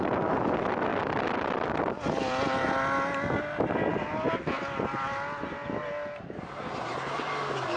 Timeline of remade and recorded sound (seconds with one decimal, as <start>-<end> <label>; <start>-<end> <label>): 0.0-7.8 recorded